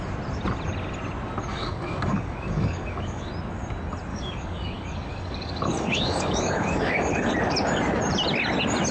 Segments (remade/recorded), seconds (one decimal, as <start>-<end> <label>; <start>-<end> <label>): 0.0-1.5 recorded; 1.5-3.3 remade; 3.3-4.1 recorded; 4.1-7.1 remade; 7.1-8.9 recorded